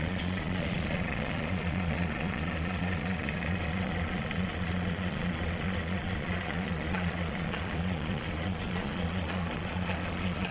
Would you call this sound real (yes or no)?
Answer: no